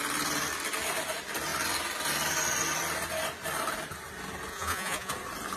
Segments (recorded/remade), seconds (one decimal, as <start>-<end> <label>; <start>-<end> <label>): 0.0-4.5 recorded; 4.5-5.1 remade; 5.1-5.6 recorded